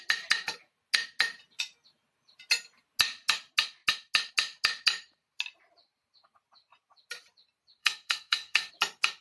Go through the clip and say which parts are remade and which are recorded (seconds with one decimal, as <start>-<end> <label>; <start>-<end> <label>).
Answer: 0.0-7.8 recorded; 7.8-8.7 remade; 8.7-9.2 recorded